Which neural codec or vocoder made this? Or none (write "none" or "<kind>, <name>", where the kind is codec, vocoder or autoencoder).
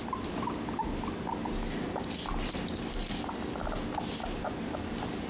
none